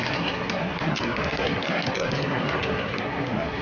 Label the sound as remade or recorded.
remade